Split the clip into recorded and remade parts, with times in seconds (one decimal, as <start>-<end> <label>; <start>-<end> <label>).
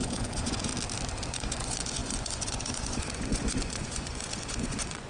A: 0.0-0.7 remade; 0.7-1.3 recorded; 1.3-5.1 remade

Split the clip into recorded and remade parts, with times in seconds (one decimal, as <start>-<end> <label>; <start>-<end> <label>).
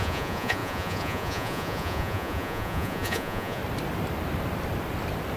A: 0.0-3.6 remade; 3.6-5.4 recorded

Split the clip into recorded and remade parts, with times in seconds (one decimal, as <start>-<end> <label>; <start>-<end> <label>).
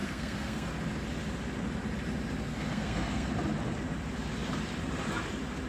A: 0.0-0.7 remade; 0.7-2.5 recorded; 2.5-3.3 remade; 3.3-5.7 recorded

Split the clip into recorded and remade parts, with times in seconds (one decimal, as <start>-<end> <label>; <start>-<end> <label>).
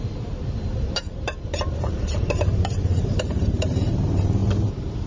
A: 0.0-0.7 recorded; 0.7-3.8 remade; 3.8-4.4 recorded; 4.4-5.1 remade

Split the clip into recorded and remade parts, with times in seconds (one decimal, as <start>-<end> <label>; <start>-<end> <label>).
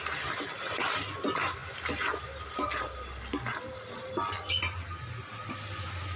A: 0.0-6.2 recorded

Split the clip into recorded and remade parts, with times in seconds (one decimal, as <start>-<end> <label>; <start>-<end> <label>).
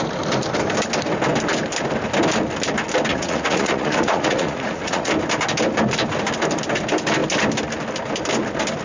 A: 0.0-3.1 recorded; 3.1-5.1 remade; 5.1-8.8 recorded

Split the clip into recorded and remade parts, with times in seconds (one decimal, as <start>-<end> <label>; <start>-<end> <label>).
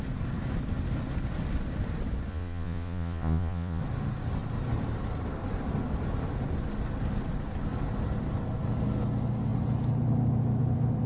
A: 0.0-2.3 recorded; 2.3-3.8 remade; 3.8-11.1 recorded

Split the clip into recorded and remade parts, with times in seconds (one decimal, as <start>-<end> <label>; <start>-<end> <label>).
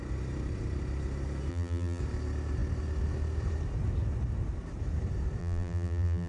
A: 0.0-1.5 recorded; 1.5-2.0 remade; 2.0-5.4 recorded; 5.4-6.3 remade